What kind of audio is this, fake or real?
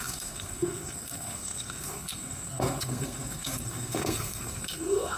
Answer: fake